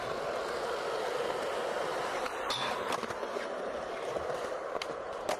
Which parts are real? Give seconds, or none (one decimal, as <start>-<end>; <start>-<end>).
0.0-1.9